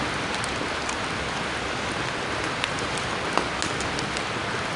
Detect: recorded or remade recorded